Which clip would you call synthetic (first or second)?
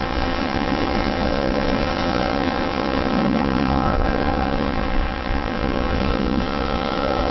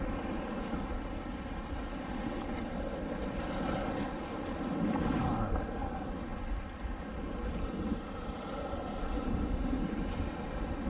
first